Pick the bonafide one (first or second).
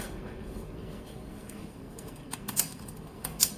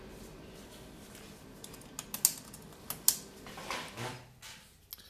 second